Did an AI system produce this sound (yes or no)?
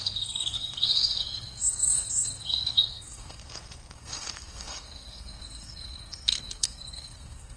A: yes